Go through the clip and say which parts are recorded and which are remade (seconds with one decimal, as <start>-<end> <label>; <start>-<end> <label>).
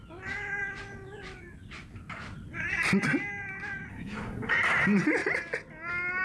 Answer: 0.0-3.9 recorded; 3.9-4.5 remade; 4.5-6.2 recorded